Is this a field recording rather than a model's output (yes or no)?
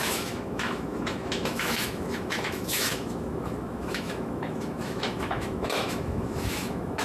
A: no